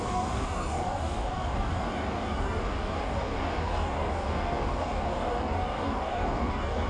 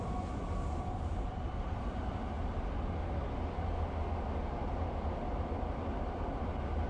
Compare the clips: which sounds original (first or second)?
second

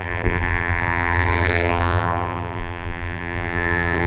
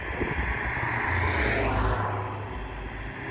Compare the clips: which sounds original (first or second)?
second